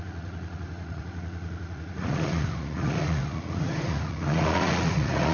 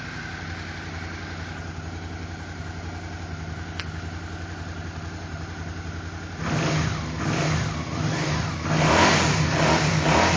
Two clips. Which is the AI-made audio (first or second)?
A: first